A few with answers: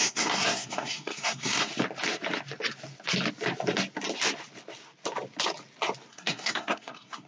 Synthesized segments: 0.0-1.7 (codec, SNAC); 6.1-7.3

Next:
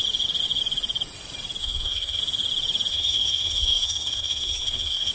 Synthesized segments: 1.6-2.2 (codec, SNAC); 2.9-5.1

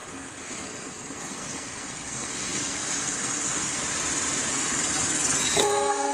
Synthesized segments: 0.0-3.8 (codec, SNAC); 4.5-6.1